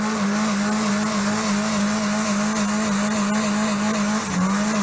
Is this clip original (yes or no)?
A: yes